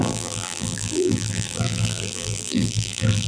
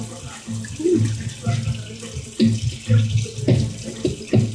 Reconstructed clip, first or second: first